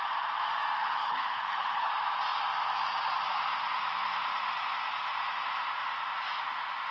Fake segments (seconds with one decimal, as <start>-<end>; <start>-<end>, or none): 0.8-1.9